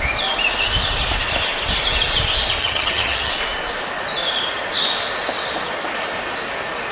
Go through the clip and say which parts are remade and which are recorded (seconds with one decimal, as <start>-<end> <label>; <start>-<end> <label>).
0.0-2.6 recorded; 2.6-3.3 remade; 3.3-6.9 recorded